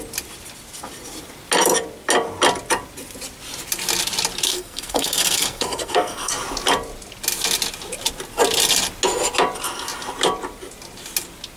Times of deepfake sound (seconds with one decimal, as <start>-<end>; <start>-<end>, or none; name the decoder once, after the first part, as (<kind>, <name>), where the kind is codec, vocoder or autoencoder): 4.5-6.3 (codec, SNAC)